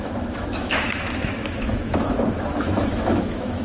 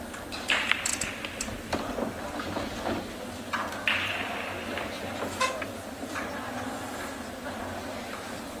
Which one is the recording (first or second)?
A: second